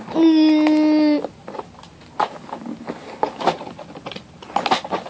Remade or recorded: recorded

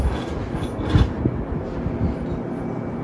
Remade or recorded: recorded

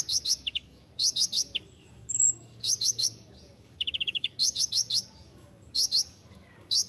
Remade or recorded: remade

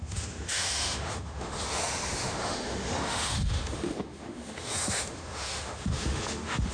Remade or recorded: remade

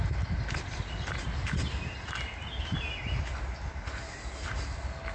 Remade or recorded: recorded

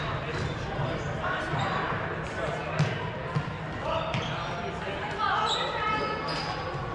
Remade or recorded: recorded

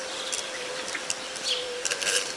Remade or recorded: recorded